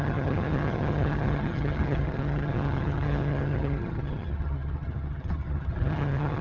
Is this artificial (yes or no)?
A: yes